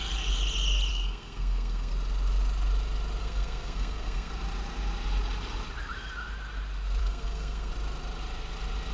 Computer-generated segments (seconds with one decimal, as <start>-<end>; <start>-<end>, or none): 0.9-1.9; 3.2-4.3; 7.0-7.7